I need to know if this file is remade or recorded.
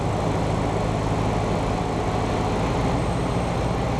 recorded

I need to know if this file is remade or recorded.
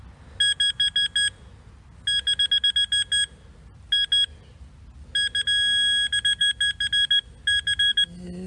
recorded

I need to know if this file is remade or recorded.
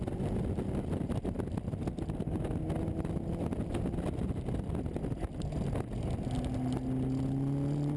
recorded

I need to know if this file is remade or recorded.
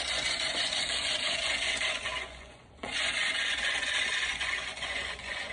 remade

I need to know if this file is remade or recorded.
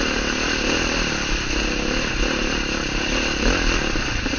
recorded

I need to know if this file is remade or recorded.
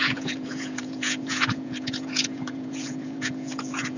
remade